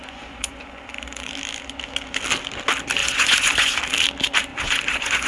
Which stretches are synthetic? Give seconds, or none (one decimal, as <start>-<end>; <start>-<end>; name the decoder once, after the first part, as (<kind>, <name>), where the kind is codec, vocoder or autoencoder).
0.0-1.3 (vocoder, Vocos); 3.0-3.8; 4.5-5.3